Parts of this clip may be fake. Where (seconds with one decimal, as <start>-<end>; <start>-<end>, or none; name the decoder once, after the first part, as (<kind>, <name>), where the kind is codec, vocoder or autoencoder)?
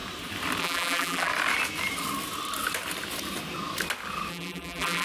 0.6-1.3 (vocoder, BigVGAN v2); 4.3-5.0